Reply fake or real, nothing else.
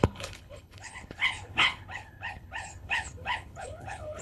fake